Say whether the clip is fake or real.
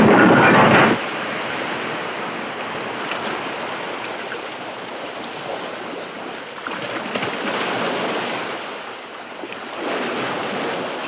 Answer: real